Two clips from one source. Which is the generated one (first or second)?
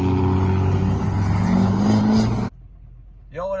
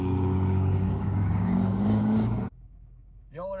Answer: second